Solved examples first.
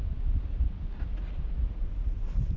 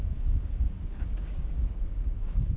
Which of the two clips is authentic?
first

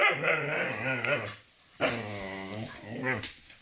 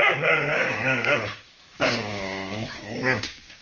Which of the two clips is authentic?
first